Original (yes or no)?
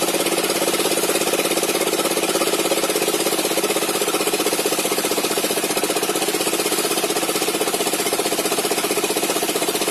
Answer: yes